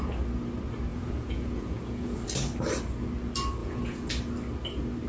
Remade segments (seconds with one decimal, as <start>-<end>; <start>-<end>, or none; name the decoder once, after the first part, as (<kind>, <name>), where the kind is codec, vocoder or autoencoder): 0.9-2.2 (vocoder, Vocos); 3.6-4.1